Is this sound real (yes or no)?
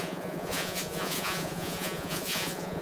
no